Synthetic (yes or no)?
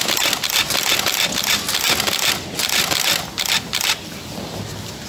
no